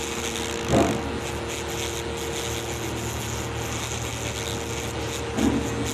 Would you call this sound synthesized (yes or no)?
no